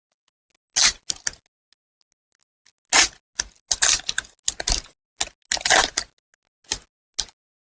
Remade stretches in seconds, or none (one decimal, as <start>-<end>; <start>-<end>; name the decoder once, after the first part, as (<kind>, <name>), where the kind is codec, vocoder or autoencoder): none